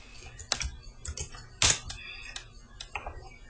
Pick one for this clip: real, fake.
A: real